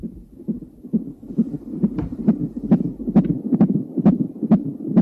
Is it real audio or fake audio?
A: real